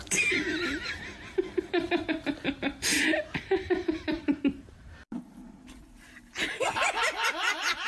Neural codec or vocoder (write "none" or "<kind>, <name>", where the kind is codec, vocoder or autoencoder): vocoder, BigVGAN v2